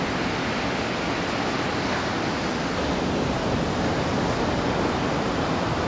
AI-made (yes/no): no